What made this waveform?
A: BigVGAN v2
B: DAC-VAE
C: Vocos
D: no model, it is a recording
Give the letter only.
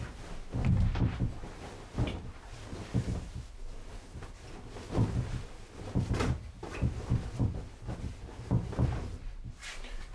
D